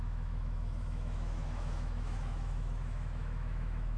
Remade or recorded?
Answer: remade